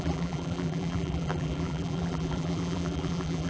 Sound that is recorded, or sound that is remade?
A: remade